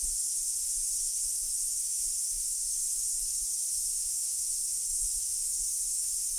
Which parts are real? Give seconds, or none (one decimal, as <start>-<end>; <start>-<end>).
none